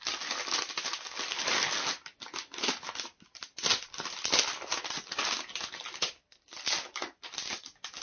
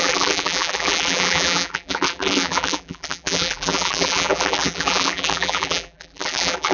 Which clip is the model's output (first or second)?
second